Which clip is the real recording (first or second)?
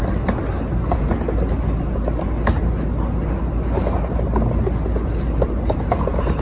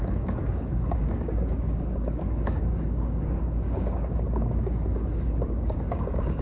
first